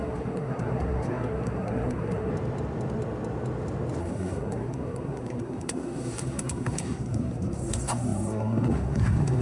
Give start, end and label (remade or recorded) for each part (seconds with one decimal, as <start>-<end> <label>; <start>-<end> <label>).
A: 0.0-2.3 remade; 2.3-4.0 recorded; 4.0-9.4 remade